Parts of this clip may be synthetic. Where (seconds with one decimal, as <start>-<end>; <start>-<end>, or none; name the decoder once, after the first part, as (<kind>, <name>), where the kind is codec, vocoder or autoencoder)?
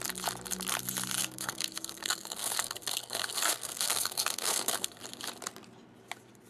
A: 1.2-5.0 (codec, SNAC)